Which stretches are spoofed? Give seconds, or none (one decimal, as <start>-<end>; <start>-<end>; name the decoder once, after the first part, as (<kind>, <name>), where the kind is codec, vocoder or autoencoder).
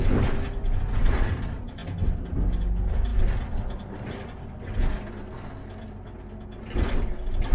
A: none